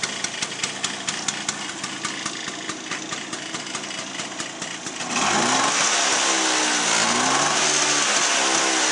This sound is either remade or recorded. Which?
recorded